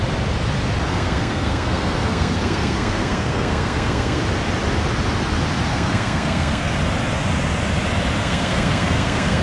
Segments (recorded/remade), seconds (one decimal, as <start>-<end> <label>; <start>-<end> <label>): 0.0-0.9 recorded; 0.9-4.2 remade; 4.2-5.7 recorded; 5.7-6.7 remade; 6.7-8.2 recorded; 8.2-9.4 remade